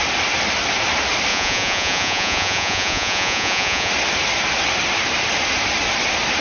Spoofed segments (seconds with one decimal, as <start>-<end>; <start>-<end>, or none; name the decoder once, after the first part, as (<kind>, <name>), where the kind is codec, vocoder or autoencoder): 1.3-3.9 (vocoder, Vocos)